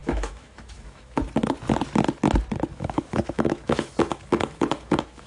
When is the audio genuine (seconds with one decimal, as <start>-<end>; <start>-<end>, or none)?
1.2-2.7